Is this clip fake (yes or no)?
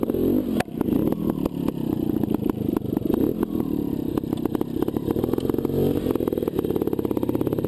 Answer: no